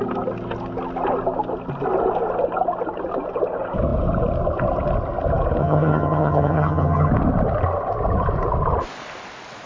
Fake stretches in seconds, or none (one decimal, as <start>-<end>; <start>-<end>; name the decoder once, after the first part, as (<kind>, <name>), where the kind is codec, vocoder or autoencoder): 5.6-7.1 (vocoder, HiFi-GAN)